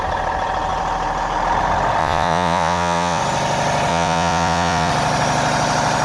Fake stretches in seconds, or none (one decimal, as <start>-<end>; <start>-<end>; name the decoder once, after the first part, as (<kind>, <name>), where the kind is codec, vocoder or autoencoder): 2.0-3.2 (vocoder, Vocos); 3.9-4.9